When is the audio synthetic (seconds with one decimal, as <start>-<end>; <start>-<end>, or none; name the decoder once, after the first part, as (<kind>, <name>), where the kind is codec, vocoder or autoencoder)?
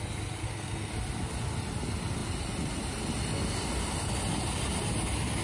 0.4-0.9 (codec, SNAC)